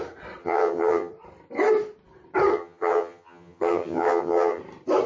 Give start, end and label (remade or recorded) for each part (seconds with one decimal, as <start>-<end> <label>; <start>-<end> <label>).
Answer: 0.0-0.4 recorded; 0.4-1.1 remade; 1.1-2.5 recorded; 2.5-4.6 remade; 4.6-5.1 recorded